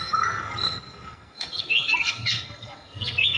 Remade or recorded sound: remade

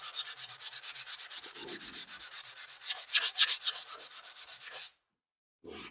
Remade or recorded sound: remade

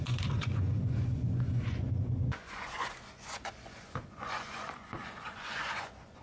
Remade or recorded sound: remade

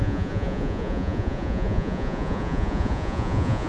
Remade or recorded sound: remade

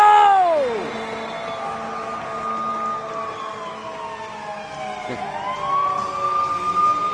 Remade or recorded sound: recorded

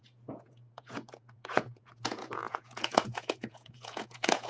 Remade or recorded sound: remade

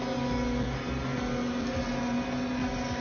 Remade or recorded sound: recorded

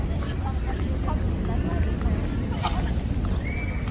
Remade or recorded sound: recorded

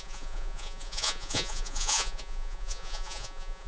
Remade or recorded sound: remade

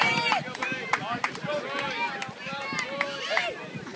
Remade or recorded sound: recorded